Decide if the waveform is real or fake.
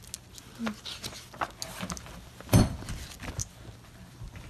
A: real